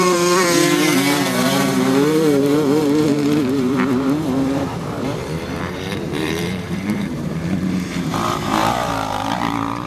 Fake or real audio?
fake